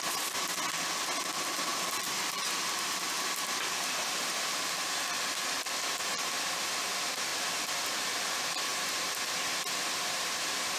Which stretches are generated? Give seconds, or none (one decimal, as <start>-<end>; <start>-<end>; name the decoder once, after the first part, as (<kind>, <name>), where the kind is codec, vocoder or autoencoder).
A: 1.7-5.2 (vocoder, BigVGAN v2); 7.3-7.8